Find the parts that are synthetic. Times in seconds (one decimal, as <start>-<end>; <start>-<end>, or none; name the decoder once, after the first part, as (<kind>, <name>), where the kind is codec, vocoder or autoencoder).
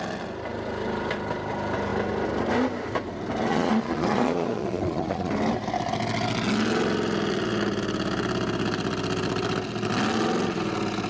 3.5-5.3 (vocoder, Vocos)